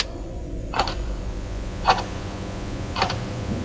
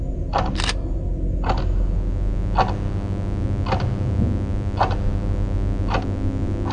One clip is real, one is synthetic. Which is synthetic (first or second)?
first